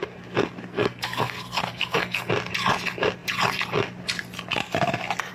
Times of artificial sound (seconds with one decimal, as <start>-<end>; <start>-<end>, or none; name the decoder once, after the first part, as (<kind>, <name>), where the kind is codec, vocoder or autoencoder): 0.7-2.3 (codec, SNAC)